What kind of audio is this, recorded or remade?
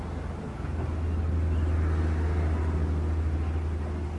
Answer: recorded